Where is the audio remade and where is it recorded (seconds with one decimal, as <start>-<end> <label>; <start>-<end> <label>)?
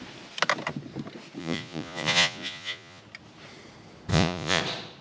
0.0-1.4 recorded; 1.4-3.0 remade; 3.0-4.1 recorded; 4.1-4.6 remade; 4.6-5.0 recorded